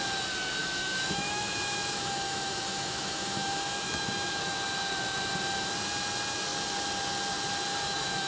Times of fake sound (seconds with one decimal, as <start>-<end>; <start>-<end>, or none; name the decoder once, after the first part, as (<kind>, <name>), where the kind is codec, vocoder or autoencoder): 0.6-4.6 (autoencoder, DAC-VAE); 7.7-8.3